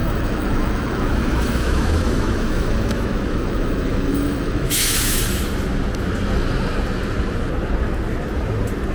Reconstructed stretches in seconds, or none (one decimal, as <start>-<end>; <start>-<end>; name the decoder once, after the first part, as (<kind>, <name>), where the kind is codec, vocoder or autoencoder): 0.0-5.2 (autoencoder, DAC-VAE)